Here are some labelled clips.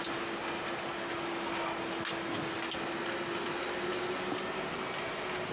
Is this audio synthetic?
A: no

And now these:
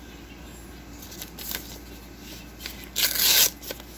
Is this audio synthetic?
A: no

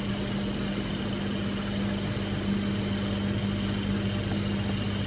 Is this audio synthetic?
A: no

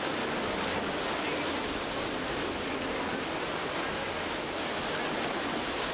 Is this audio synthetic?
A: no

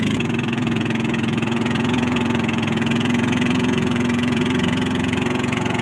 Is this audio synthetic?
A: yes